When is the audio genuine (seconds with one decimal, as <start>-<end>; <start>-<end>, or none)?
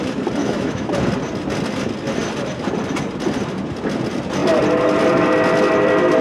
0.0-0.4; 0.9-6.2